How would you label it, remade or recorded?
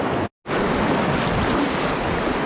recorded